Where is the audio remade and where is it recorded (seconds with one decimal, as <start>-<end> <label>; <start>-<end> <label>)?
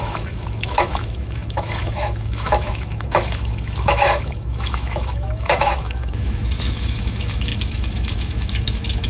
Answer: 0.0-9.1 remade